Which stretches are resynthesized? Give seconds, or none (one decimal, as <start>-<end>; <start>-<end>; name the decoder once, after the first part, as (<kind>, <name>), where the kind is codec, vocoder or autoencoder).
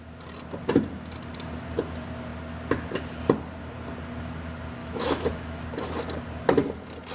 4.8-5.6 (autoencoder, DAC-VAE)